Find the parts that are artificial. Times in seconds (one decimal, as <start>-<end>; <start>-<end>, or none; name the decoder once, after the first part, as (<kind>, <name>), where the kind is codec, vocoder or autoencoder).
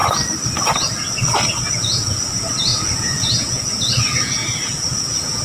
1.7-5.4 (vocoder, Vocos)